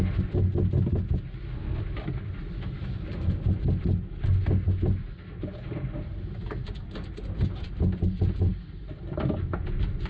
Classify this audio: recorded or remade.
recorded